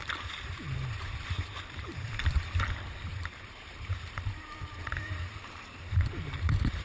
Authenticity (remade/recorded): remade